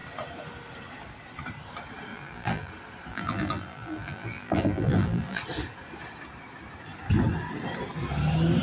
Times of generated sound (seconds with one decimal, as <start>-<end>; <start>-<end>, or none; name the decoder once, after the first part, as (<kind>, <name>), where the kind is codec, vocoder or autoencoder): 2.1-2.7 (vocoder, BigVGAN v2); 3.1-5.4